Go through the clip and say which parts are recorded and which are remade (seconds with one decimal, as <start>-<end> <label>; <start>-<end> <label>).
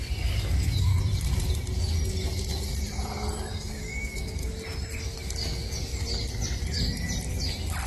0.0-0.9 remade; 0.9-3.5 recorded; 3.5-4.4 remade; 4.4-5.0 recorded; 5.0-5.9 remade; 5.9-7.9 recorded